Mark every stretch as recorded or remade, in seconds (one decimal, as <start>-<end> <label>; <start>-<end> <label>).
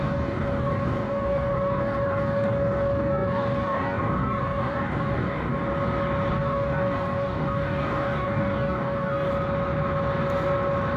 0.0-5.5 remade; 5.5-6.3 recorded; 6.3-9.3 remade; 9.3-11.0 recorded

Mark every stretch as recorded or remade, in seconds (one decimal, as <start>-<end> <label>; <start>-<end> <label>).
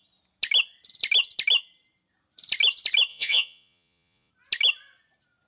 0.0-3.1 recorded; 3.1-4.3 remade; 4.3-5.5 recorded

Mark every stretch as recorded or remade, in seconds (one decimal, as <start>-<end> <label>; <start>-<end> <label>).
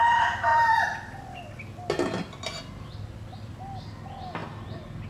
0.0-5.1 recorded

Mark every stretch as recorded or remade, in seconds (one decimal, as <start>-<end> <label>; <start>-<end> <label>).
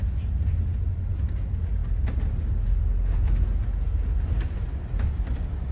0.0-5.7 recorded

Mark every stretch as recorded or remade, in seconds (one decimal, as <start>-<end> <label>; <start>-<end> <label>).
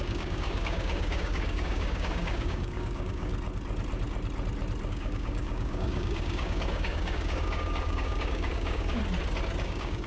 0.0-3.3 remade; 3.3-4.9 recorded; 4.9-9.0 remade; 9.0-9.6 recorded; 9.6-10.1 remade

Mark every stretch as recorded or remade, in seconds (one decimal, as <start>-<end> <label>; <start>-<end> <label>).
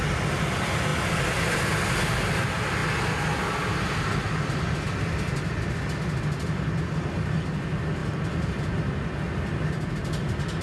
0.0-10.6 recorded